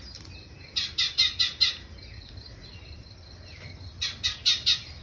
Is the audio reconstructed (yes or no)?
no